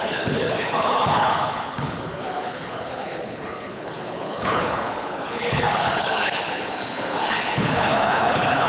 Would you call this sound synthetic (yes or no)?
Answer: yes